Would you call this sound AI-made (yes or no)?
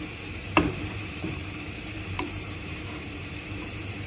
yes